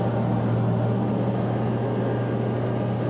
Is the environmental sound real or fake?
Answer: real